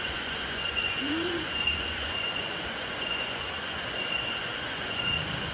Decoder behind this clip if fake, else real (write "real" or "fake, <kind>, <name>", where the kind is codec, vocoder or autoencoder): fake, vocoder, Vocos